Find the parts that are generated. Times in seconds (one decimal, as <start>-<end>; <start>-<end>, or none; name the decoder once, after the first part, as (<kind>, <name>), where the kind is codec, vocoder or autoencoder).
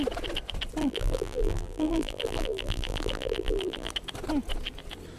0.8-3.9 (vocoder, BigVGAN v2)